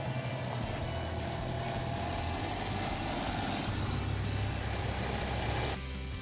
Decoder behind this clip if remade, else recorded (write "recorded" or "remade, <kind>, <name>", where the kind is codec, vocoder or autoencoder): recorded